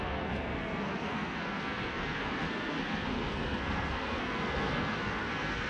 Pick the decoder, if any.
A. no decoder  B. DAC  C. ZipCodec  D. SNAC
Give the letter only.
D